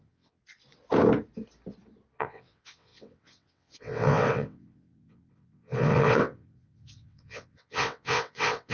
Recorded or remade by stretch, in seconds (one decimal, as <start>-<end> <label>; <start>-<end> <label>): 0.0-0.4 remade; 0.4-2.2 recorded; 2.2-8.7 remade